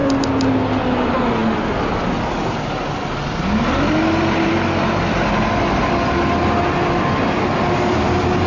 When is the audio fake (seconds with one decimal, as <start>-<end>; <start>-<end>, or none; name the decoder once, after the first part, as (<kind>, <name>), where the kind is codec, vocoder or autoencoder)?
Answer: none